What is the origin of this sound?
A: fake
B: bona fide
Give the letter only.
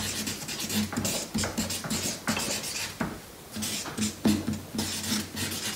B